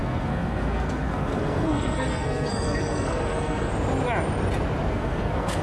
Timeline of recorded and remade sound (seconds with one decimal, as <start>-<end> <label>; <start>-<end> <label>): 0.0-3.7 remade; 3.7-4.9 recorded; 4.9-5.6 remade